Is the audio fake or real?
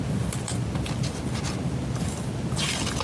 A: real